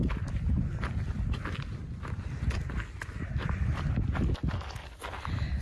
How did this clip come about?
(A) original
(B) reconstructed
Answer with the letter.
A